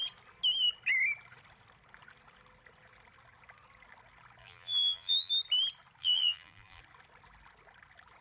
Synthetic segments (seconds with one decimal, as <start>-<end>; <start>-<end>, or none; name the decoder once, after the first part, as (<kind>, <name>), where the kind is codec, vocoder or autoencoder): 4.4-5.3 (vocoder, BigVGAN v2); 6.0-6.8